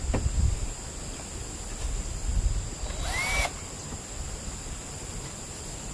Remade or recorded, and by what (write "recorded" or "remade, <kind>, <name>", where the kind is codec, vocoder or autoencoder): recorded